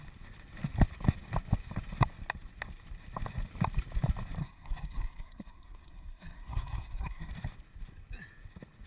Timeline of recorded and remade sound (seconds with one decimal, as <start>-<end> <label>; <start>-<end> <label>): 0.0-4.4 recorded; 4.4-7.3 remade; 7.3-8.9 recorded